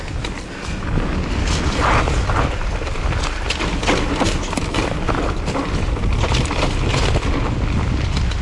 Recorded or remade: recorded